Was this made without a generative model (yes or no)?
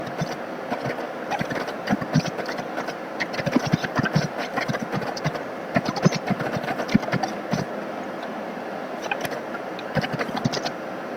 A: yes